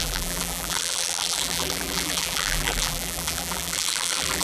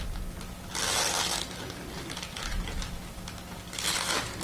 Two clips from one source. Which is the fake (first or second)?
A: first